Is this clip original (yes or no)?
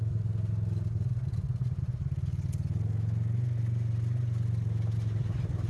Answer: yes